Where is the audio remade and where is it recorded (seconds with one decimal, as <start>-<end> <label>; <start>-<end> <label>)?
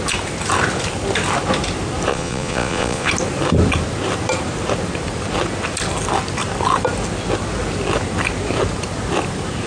0.0-2.1 recorded; 2.1-3.1 remade; 3.1-9.7 recorded